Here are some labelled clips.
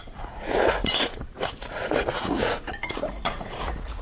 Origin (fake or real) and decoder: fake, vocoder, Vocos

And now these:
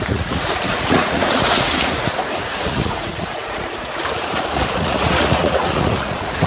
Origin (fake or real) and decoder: fake, vocoder, Vocos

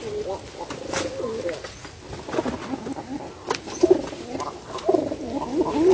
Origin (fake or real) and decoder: real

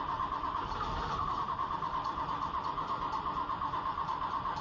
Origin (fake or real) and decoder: fake, vocoder, BigVGAN v2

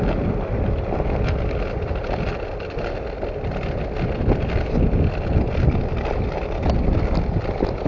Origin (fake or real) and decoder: real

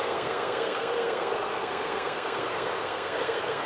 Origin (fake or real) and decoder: fake, codec, SNAC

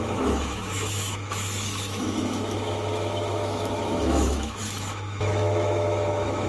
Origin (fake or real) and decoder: fake, autoencoder, DAC-VAE